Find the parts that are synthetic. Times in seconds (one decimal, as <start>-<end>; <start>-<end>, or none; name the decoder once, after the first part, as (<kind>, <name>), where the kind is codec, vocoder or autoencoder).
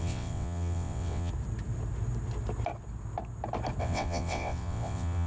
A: 0.0-1.3 (vocoder, WaveNeXt); 3.8-5.3